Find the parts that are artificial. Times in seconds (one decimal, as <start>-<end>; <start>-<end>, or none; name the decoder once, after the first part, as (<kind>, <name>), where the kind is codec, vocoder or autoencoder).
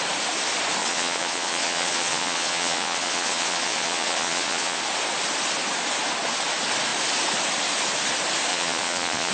0.8-4.8 (vocoder, Vocos); 8.5-9.3